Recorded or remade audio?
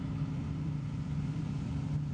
remade